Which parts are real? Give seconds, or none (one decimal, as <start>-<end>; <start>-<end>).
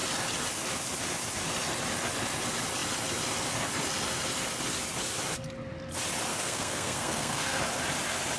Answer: 0.0-6.3; 7.6-8.4